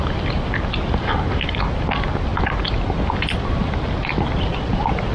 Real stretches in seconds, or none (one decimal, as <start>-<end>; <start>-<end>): 0.0-5.1